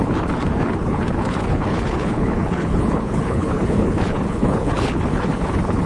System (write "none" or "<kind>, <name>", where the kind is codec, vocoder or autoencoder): codec, HILCodec